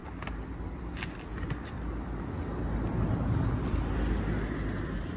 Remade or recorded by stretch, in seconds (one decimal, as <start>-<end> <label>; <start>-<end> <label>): 0.0-5.2 recorded